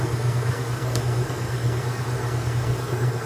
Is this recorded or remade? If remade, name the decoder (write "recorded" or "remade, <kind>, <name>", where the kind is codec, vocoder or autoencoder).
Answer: remade, codec, SNAC